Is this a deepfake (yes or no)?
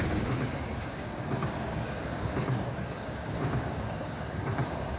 yes